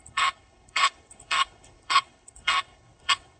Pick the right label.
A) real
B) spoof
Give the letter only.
B